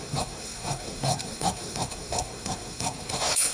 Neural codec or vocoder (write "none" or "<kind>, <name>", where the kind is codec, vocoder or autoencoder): codec, SNAC